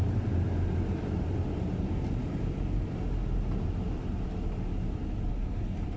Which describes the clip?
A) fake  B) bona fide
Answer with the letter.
B